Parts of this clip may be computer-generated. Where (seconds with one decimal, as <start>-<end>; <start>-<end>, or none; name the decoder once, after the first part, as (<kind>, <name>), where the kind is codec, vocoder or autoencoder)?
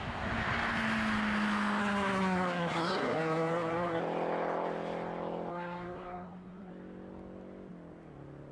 1.8-4.0 (codec, SNAC); 5.5-6.7